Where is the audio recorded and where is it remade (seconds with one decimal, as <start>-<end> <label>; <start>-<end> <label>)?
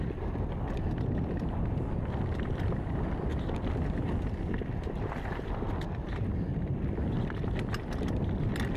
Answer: 0.0-8.8 recorded